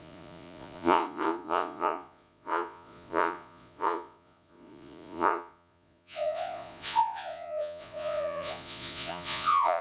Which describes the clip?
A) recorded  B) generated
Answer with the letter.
B